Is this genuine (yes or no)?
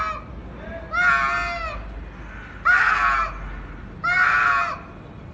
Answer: yes